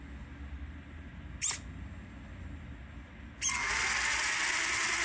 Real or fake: real